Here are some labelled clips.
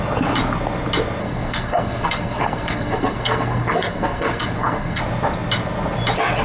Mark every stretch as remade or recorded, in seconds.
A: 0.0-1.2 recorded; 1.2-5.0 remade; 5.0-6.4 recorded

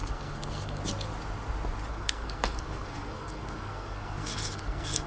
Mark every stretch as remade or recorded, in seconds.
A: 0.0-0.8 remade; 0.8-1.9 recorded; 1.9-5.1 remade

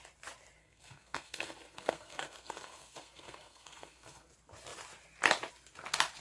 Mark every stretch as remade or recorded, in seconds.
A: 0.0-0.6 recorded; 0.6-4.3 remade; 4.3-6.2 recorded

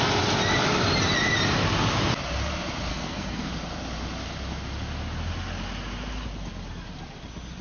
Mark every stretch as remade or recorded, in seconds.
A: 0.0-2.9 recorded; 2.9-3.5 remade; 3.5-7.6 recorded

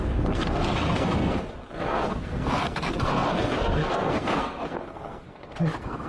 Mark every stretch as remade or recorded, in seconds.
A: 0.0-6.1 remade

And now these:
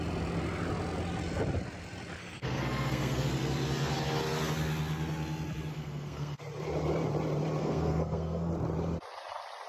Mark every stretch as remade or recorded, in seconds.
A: 0.0-2.2 recorded; 2.2-3.3 remade; 3.3-5.7 recorded; 5.7-6.4 remade; 6.4-7.6 recorded; 7.6-8.5 remade; 8.5-9.7 recorded